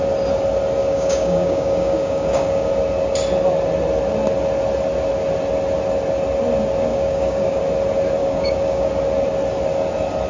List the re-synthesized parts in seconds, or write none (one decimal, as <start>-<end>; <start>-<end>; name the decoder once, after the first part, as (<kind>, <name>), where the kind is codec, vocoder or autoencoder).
0.8-2.7 (codec, DAC); 6.9-7.6; 8.2-8.9